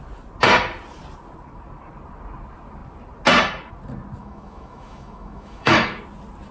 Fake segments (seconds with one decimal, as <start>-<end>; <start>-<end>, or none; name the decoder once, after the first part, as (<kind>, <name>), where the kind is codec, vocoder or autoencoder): 4.2-6.0 (autoencoder, DAC-VAE)